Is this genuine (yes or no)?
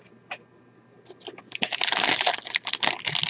yes